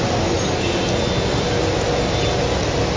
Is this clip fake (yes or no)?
no